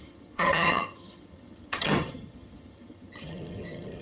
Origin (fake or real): fake